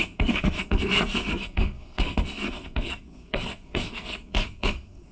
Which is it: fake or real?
fake